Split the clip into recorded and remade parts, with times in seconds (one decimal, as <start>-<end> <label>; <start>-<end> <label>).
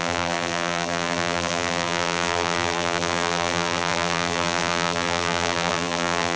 0.0-6.4 remade